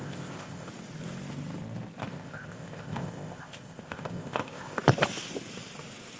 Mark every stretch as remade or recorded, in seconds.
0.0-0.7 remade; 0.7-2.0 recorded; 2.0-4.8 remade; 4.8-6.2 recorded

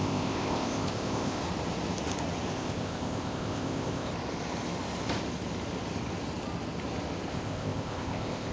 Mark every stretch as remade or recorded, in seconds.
0.0-1.4 remade; 1.4-2.5 recorded; 2.5-4.1 remade; 4.1-7.3 recorded; 7.3-8.5 remade